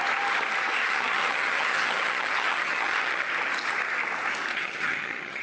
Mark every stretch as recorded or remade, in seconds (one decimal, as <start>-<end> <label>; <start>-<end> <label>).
0.0-0.8 recorded; 0.8-3.2 remade; 3.2-4.5 recorded; 4.5-5.4 remade